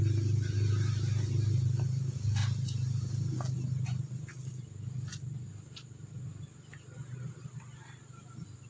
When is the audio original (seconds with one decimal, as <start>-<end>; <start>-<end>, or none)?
0.0-8.7